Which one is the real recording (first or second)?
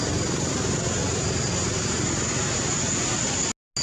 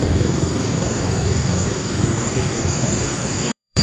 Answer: first